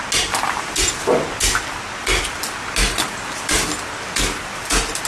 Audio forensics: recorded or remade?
recorded